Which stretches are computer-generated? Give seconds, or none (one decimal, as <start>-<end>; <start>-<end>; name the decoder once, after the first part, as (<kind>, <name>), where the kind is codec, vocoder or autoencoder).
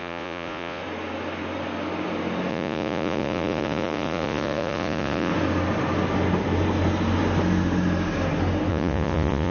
0.0-0.8 (vocoder, Vocos); 2.5-5.3; 8.7-9.5